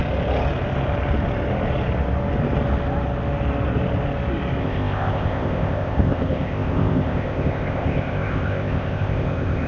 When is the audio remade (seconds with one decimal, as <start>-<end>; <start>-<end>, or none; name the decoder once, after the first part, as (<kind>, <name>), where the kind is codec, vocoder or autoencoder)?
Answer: 4.6-9.7 (codec, ZipCodec)